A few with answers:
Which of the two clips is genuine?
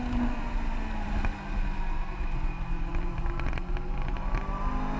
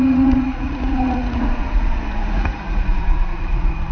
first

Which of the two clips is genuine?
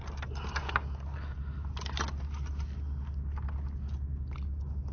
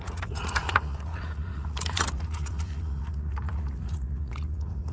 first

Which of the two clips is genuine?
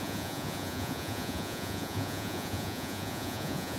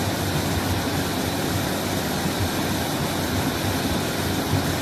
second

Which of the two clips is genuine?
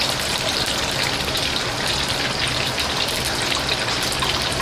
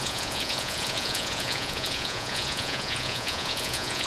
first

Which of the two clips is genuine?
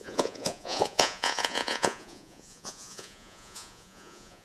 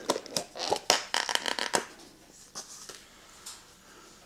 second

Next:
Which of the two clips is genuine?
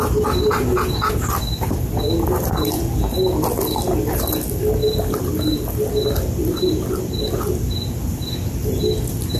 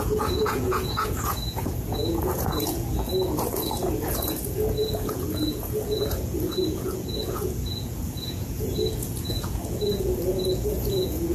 first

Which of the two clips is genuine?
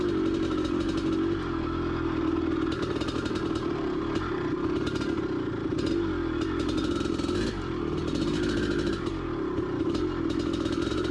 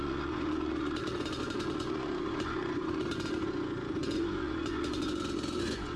first